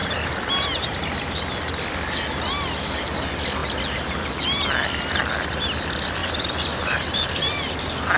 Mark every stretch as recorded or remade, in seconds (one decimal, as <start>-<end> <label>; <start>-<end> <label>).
0.0-1.0 remade; 1.0-6.2 recorded; 6.2-7.7 remade; 7.7-8.2 recorded